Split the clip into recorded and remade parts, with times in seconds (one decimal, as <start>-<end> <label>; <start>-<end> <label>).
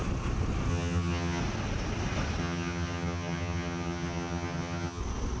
0.0-0.7 recorded; 0.7-1.4 remade; 1.4-2.4 recorded; 2.4-5.0 remade; 5.0-5.4 recorded